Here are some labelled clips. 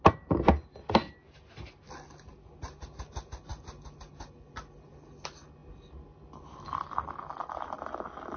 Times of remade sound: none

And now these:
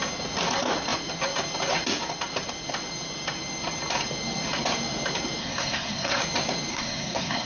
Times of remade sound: 5.4-6.2; 6.7-7.5

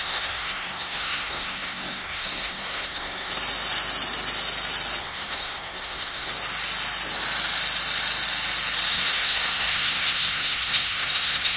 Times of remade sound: 0.0-3.3; 5.0-6.3; 8.9-11.6

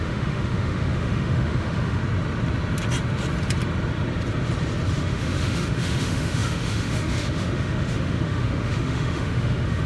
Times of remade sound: 0.0-2.0; 4.9-9.9

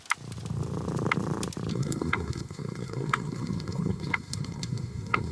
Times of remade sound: 1.7-5.3

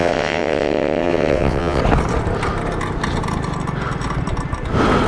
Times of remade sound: 0.0-1.8